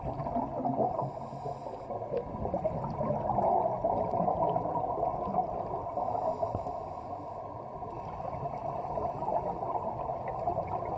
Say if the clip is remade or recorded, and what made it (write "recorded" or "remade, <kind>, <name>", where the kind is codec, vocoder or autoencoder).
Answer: recorded